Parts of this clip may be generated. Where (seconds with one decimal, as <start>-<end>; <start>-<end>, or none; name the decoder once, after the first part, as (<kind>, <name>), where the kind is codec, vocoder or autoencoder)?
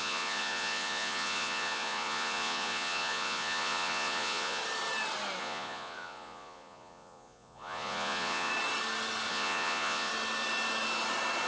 0.0-4.6 (vocoder, Vocos); 5.4-8.5; 9.3-10.1